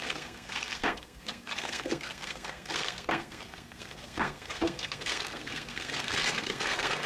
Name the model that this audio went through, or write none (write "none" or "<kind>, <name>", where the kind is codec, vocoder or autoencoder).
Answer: codec, SNAC